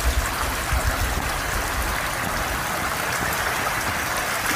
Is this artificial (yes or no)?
no